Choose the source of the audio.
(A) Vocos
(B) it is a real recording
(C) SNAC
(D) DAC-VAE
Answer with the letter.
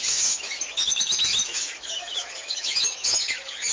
D